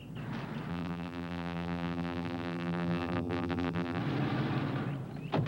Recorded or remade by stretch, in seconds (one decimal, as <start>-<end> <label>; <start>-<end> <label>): 0.0-0.7 recorded; 0.7-4.0 remade; 4.0-5.5 recorded